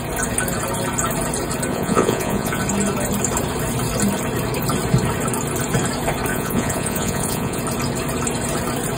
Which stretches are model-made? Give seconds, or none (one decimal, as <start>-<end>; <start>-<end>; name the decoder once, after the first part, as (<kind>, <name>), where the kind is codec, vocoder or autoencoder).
1.7-2.6 (vocoder, Vocos); 6.3-7.6